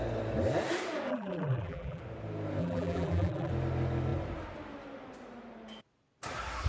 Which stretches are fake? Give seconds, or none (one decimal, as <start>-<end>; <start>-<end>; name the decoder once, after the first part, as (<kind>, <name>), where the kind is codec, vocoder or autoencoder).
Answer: 1.1-2.0 (vocoder, BigVGAN v2); 2.6-3.5